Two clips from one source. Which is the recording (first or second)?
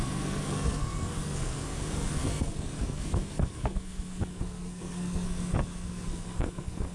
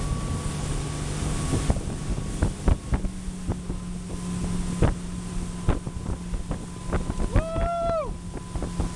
second